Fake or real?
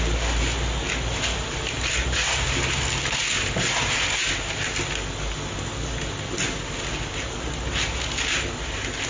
real